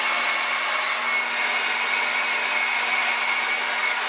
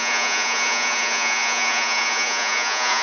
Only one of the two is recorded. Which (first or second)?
first